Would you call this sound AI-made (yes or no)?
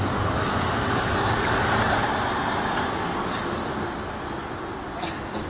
no